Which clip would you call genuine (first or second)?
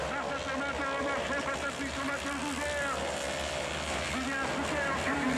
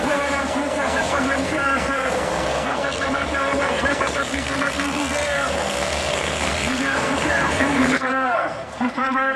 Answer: first